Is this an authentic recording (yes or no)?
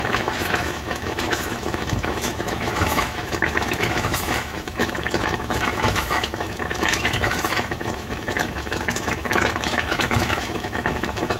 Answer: no